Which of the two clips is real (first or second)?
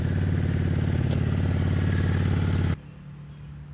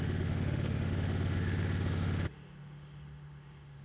first